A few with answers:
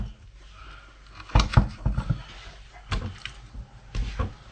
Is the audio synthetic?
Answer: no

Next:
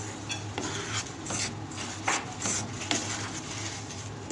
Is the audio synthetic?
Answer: no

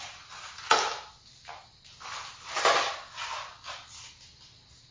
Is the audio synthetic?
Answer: no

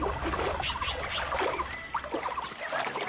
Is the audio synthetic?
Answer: no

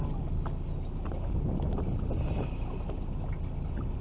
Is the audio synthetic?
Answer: no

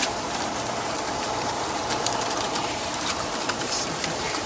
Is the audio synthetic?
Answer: yes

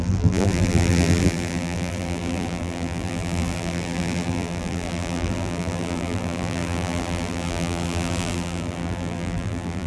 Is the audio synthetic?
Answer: yes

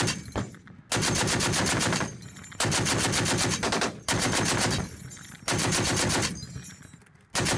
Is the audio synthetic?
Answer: no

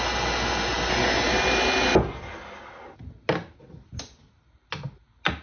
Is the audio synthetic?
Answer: no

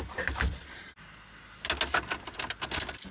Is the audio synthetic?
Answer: no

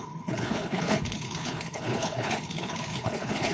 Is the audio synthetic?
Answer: yes